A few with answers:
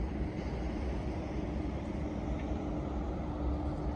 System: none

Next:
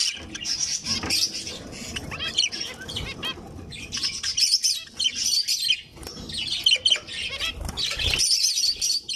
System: none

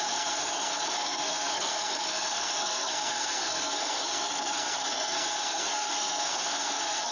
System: codec, SNAC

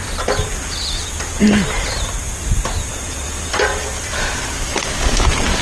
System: none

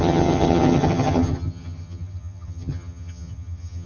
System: vocoder, HiFi-GAN